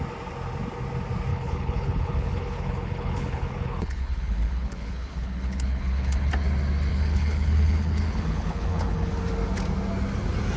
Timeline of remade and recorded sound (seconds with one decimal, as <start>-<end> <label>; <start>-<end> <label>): 0.0-1.3 recorded; 1.3-6.3 remade; 6.3-6.9 recorded; 6.9-9.1 remade; 9.1-10.6 recorded